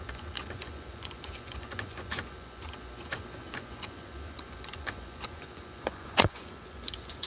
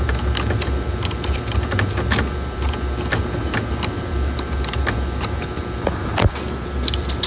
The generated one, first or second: first